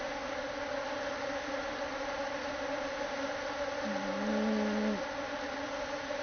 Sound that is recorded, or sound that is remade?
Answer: recorded